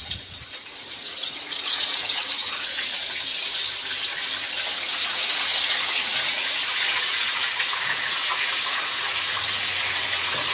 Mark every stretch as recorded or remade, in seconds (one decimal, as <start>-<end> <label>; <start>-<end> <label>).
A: 0.0-3.3 remade; 3.3-4.7 recorded; 4.7-10.5 remade